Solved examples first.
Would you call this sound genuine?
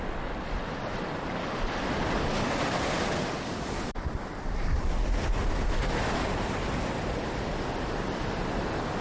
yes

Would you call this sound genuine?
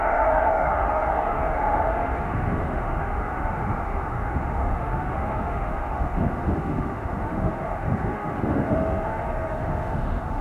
no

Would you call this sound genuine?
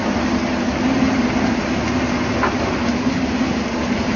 yes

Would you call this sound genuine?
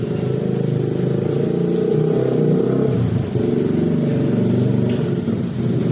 yes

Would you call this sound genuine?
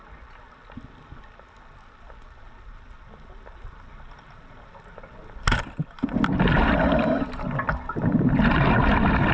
yes